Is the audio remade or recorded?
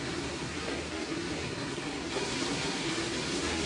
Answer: remade